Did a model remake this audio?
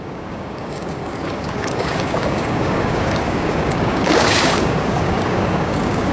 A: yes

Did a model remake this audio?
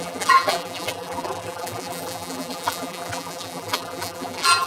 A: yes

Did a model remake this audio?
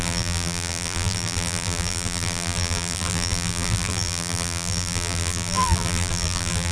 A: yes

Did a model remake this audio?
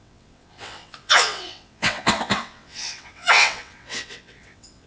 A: yes